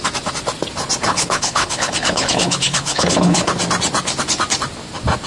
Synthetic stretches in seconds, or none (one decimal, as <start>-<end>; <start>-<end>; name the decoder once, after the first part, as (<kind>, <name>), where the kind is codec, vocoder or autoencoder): 1.1-3.5 (codec, HILCodec)